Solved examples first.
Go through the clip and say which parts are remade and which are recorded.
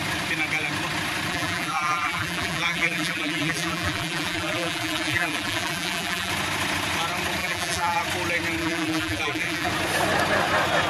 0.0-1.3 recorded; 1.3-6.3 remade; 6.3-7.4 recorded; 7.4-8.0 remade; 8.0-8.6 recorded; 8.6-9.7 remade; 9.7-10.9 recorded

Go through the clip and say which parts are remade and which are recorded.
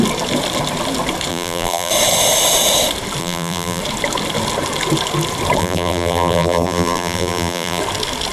0.0-1.3 recorded; 1.3-1.9 remade; 1.9-3.2 recorded; 3.2-3.8 remade; 3.8-5.6 recorded; 5.6-7.8 remade; 7.8-8.3 recorded